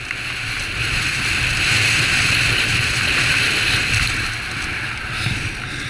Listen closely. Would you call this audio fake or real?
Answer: real